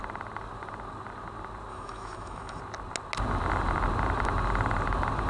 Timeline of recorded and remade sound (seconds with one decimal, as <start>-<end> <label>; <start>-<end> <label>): 0.0-1.7 recorded; 1.7-2.6 remade; 2.6-5.3 recorded